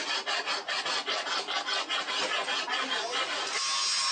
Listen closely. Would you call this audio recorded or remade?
recorded